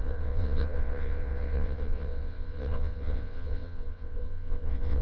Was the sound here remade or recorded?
remade